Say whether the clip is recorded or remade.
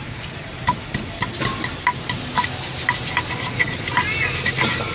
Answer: recorded